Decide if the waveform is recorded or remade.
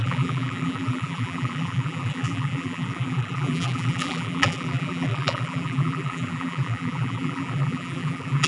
remade